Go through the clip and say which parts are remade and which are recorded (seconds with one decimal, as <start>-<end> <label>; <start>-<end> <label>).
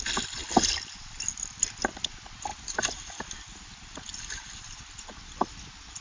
0.0-6.0 recorded